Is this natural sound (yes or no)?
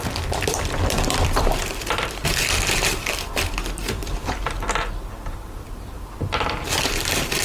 no